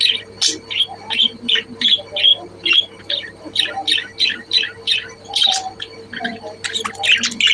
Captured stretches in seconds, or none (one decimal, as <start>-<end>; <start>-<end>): 0.0-7.5